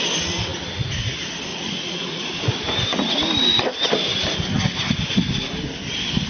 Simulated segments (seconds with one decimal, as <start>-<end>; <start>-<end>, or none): 1.5-2.4